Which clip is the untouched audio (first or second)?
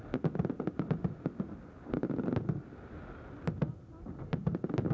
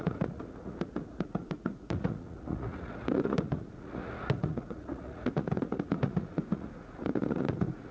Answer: first